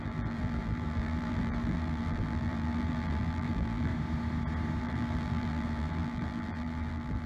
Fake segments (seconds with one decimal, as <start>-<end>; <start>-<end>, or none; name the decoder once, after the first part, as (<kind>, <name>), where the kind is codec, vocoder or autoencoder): 0.0-3.9 (vocoder, BigVGAN v2); 4.8-7.3